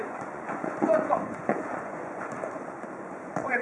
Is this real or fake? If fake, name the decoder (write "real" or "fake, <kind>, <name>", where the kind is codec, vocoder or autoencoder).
fake, vocoder, Vocos